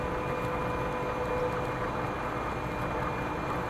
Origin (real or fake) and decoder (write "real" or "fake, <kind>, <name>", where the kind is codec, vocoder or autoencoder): real